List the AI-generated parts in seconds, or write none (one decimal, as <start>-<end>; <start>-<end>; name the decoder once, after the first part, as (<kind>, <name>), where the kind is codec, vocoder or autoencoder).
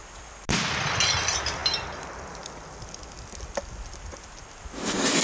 none